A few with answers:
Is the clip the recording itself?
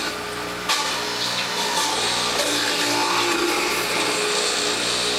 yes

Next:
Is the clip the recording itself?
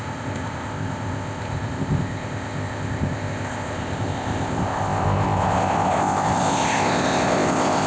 no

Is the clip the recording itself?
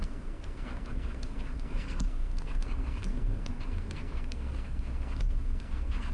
no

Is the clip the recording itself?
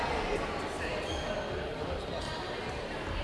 yes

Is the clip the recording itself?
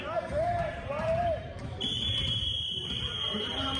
no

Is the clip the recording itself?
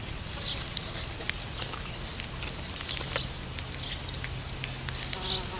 yes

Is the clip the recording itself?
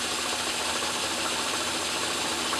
yes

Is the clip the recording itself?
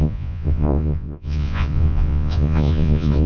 no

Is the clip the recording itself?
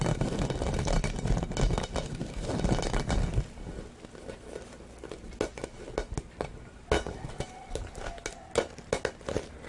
yes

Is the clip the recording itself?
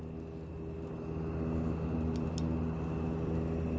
yes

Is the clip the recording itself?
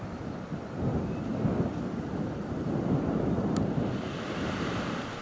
yes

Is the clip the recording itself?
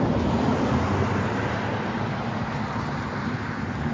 yes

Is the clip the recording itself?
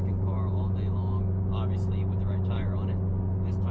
yes